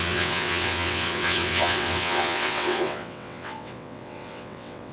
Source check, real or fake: fake